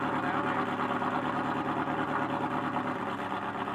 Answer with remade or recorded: recorded